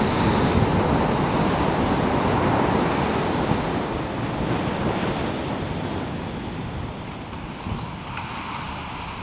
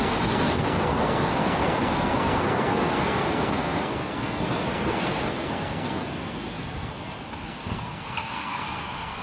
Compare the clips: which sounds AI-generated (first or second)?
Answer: second